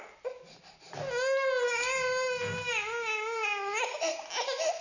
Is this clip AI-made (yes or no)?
no